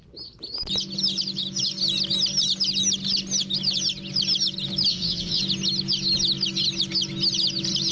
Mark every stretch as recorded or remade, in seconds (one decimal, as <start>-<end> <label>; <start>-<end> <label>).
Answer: 0.0-4.9 recorded; 4.9-5.4 remade; 5.4-7.9 recorded